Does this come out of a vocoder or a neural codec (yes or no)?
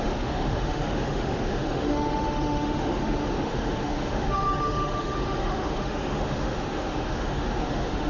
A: yes